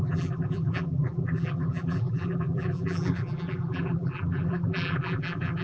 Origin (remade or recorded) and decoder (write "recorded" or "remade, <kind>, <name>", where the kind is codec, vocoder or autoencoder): remade, vocoder, BigVGAN v2